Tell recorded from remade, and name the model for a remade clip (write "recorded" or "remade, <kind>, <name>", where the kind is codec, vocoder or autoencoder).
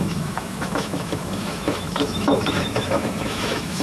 remade, autoencoder, DAC-VAE